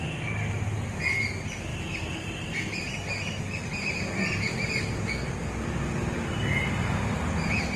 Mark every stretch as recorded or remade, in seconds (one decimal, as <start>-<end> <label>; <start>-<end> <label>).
0.0-1.7 recorded; 1.7-3.5 remade; 3.5-7.8 recorded